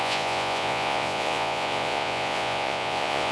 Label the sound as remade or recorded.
remade